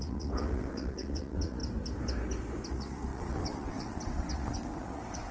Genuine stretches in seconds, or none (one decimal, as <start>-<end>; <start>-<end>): 1.6-2.7